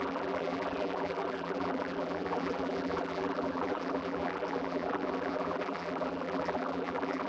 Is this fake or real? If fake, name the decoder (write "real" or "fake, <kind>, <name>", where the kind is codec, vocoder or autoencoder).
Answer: fake, vocoder, BigVGAN v2